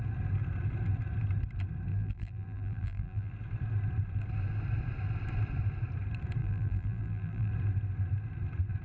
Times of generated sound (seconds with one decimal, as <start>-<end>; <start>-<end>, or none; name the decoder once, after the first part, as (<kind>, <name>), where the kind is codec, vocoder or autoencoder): 1.9-3.3 (vocoder, BigVGAN v2); 6.4-7.5